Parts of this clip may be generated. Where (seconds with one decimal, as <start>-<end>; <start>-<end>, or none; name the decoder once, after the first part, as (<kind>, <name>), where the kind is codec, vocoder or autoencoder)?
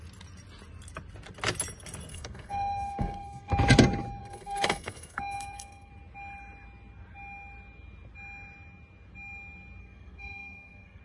2.1-3.5 (codec, SNAC); 4.2-5.9; 9.8-11.0